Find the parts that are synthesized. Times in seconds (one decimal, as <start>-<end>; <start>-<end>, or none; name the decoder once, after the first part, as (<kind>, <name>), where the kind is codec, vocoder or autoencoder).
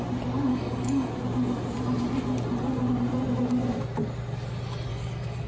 0.5-1.1 (codec, DAC); 4.9-5.5